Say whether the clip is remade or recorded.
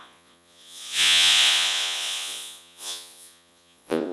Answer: remade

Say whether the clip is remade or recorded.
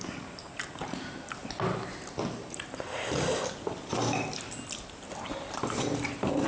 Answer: recorded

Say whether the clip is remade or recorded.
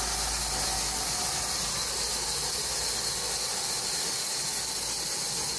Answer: recorded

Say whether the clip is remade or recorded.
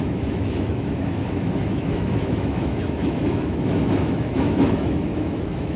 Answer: remade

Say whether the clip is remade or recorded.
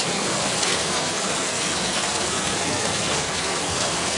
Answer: remade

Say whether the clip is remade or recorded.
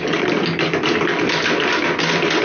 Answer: recorded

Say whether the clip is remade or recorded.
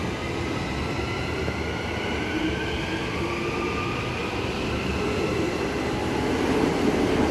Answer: recorded